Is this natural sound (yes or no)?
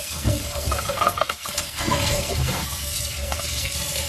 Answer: no